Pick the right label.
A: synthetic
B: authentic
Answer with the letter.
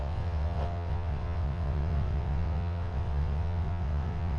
A